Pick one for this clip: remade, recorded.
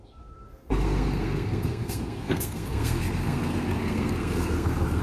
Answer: remade